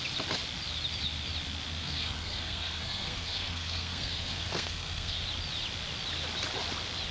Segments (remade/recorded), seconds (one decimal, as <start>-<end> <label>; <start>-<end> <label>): 0.0-1.8 recorded; 1.8-5.2 remade; 5.2-7.1 recorded